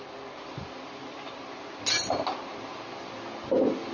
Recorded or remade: recorded